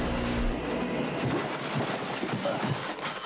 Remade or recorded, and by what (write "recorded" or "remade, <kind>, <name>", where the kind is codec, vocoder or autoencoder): recorded